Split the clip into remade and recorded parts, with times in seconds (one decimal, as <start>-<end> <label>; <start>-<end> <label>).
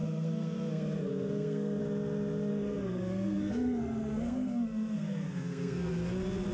0.0-1.8 remade; 1.8-2.5 recorded; 2.5-5.9 remade; 5.9-6.5 recorded